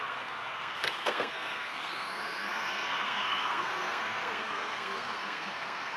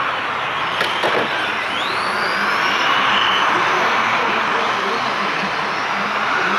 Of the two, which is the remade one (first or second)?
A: first